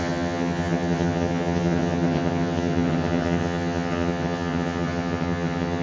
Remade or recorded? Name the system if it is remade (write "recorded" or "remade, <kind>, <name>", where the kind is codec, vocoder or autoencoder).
remade, vocoder, HiFi-GAN